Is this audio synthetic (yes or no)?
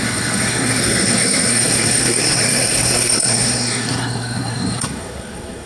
yes